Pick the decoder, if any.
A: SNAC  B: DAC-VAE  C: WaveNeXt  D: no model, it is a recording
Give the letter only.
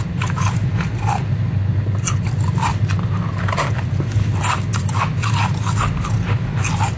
D